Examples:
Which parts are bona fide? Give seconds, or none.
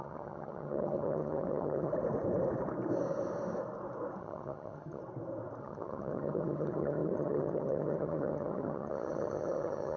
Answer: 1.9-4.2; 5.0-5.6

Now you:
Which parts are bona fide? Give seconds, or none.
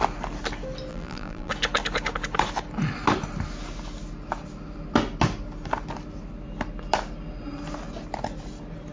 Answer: 0.0-0.9; 1.5-8.9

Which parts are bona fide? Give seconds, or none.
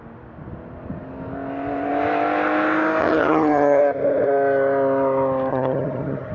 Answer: 0.0-3.0; 3.8-5.5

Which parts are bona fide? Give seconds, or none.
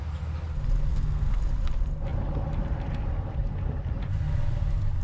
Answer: 0.0-0.9; 1.4-5.0